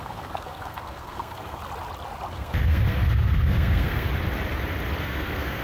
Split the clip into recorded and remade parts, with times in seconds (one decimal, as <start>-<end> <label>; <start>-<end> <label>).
0.0-1.6 remade; 1.6-2.3 recorded; 2.3-4.1 remade; 4.1-5.0 recorded; 5.0-5.6 remade